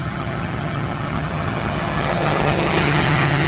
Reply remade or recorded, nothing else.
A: remade